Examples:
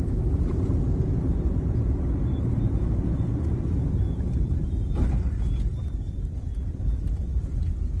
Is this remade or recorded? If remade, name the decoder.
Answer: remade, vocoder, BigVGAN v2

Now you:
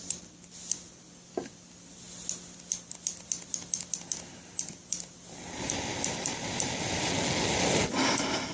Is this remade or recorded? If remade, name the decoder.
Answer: recorded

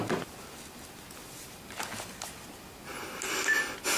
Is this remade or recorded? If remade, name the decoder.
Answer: recorded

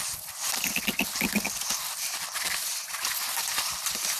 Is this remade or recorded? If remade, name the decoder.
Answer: remade, vocoder, BigVGAN v2